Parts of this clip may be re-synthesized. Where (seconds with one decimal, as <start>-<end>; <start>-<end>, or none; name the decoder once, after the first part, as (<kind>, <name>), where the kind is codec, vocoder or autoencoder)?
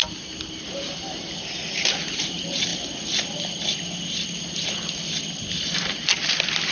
none